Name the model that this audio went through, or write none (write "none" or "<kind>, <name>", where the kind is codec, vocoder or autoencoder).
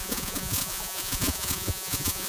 vocoder, Vocos